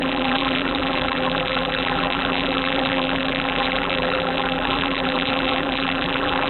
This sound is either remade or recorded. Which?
remade